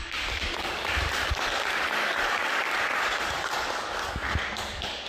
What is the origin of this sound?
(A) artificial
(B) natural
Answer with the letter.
A